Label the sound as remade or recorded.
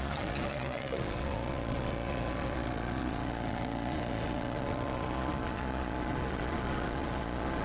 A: remade